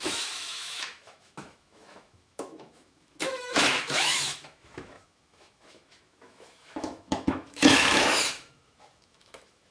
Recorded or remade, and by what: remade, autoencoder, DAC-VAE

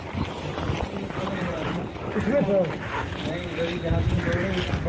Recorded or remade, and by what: recorded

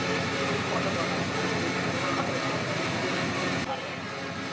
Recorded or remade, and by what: recorded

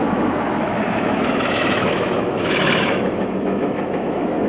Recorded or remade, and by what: remade, autoencoder, DAC-VAE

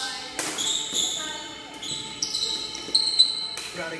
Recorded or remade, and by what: recorded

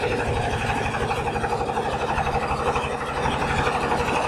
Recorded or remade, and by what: recorded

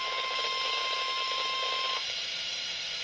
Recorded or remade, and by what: remade, autoencoder, DAC-VAE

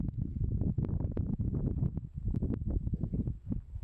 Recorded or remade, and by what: recorded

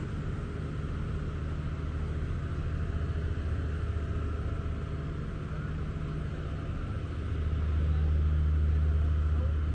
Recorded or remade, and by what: recorded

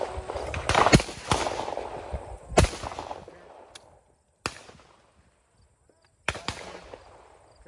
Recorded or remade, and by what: recorded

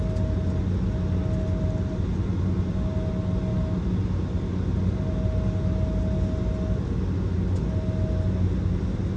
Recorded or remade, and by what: recorded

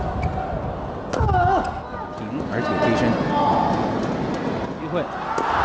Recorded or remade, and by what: recorded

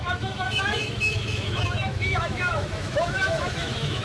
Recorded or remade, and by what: remade, autoencoder, DAC-VAE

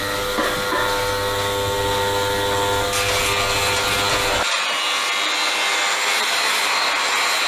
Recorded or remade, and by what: recorded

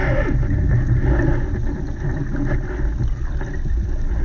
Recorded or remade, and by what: recorded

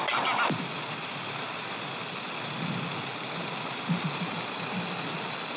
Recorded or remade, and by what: recorded